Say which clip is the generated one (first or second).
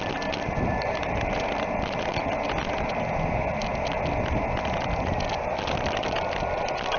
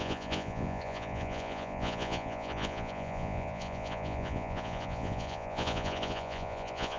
second